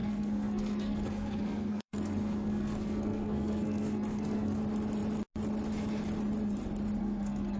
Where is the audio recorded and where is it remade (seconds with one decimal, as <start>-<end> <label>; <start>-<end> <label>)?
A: 0.0-4.6 remade; 4.6-7.0 recorded; 7.0-7.6 remade